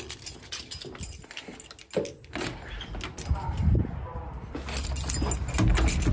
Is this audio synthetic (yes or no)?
no